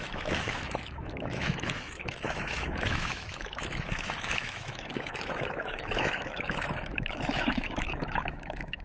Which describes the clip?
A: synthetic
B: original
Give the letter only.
A